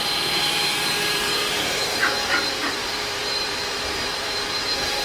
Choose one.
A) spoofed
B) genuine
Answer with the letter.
A